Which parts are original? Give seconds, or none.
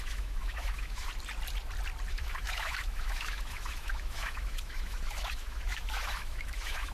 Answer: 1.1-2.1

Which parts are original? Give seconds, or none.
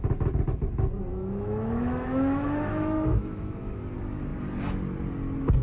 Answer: 0.0-1.1; 3.8-5.6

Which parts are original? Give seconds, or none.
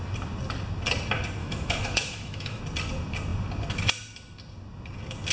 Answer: 0.0-1.4; 2.6-5.3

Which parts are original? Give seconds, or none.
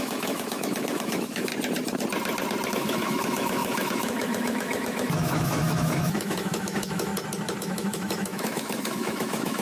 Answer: 1.5-2.7; 7.1-7.6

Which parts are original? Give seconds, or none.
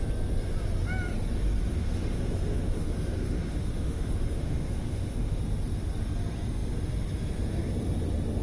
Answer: 0.0-1.7; 5.4-8.4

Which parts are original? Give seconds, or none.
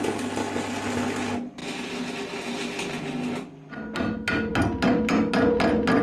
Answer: 0.0-6.0